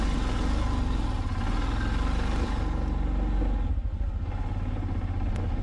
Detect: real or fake real